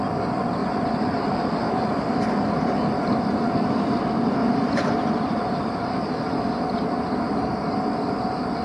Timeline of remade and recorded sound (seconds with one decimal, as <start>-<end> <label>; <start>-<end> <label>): 0.0-0.6 recorded; 0.6-3.1 remade; 3.1-4.4 recorded; 4.4-7.6 remade; 7.6-8.6 recorded